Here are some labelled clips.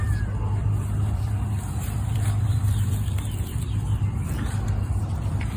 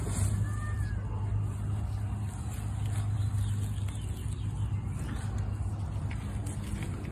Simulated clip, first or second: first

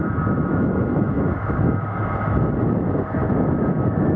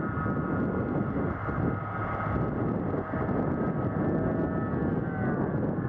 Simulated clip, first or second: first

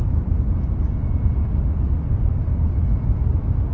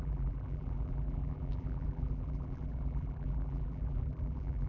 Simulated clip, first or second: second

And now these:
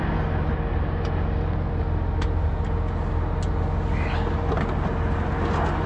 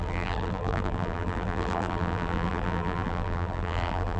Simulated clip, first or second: second